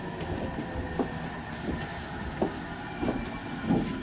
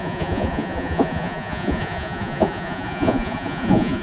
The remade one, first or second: second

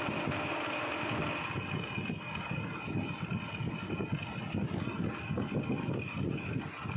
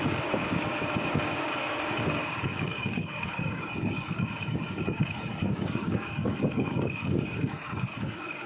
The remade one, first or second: second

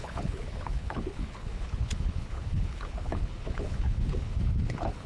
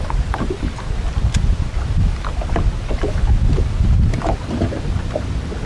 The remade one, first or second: first